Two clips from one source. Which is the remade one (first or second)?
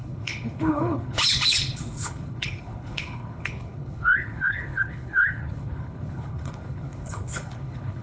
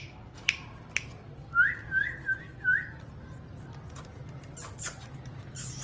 first